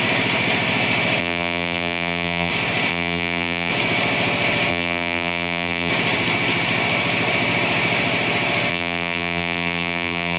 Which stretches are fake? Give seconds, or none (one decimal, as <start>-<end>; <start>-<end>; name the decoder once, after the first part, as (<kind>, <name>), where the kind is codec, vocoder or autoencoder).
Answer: 1.2-2.5 (vocoder, BigVGAN v2); 2.9-3.7; 4.7-5.9; 8.7-10.4